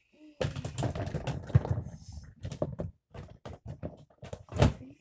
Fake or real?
real